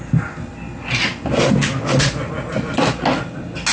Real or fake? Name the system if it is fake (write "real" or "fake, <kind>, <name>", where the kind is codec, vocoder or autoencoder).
real